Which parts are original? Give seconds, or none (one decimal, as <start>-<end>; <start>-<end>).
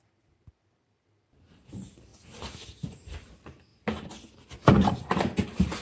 2.1-2.9; 3.7-4.7